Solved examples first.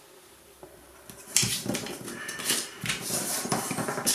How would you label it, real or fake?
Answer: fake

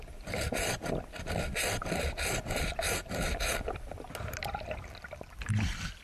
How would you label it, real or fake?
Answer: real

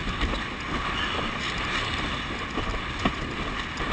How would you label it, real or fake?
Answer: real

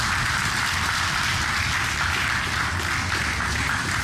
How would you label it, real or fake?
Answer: real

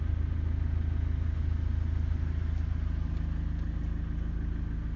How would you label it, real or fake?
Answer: real